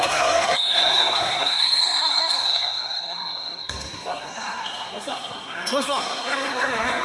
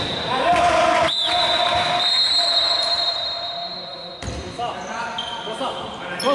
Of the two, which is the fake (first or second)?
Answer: first